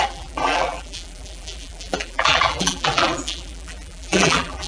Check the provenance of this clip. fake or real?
fake